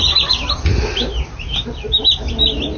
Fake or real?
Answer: real